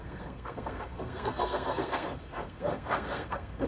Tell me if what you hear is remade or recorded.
remade